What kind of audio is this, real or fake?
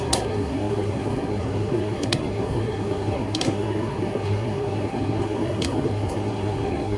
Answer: fake